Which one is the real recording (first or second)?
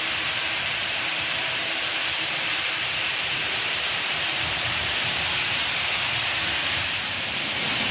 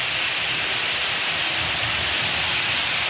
second